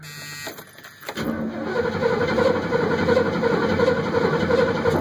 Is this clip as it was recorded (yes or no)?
yes